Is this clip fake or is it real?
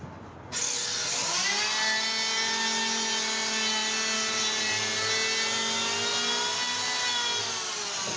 real